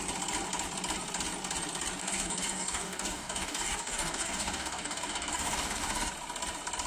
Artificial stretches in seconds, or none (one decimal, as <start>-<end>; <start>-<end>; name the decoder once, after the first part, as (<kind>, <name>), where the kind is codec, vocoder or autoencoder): 2.0-6.1 (codec, DAC)